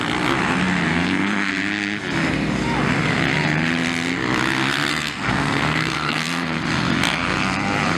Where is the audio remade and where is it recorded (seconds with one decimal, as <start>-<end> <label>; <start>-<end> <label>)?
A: 0.0-0.9 recorded; 0.9-1.5 remade; 1.5-4.9 recorded; 4.9-6.6 remade; 6.6-8.0 recorded